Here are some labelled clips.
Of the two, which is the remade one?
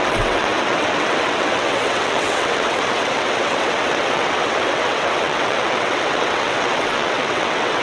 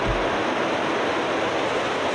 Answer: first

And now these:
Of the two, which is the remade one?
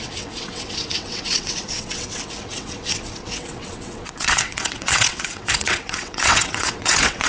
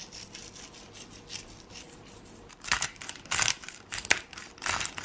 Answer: first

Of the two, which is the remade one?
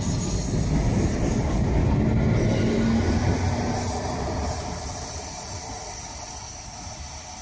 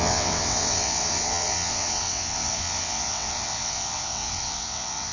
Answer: second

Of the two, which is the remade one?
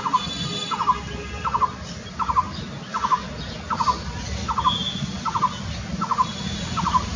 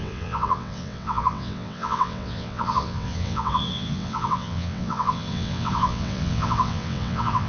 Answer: second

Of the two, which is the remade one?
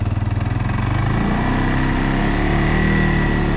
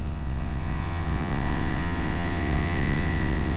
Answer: second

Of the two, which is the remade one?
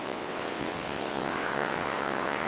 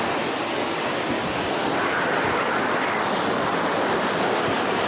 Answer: first